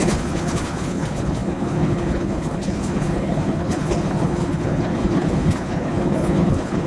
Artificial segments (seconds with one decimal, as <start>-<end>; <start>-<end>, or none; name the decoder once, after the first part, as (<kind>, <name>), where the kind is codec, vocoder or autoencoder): 0.0-6.9 (codec, HILCodec)